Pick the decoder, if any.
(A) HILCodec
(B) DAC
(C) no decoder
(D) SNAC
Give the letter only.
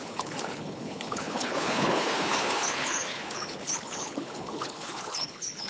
A